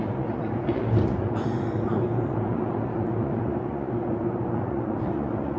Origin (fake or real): fake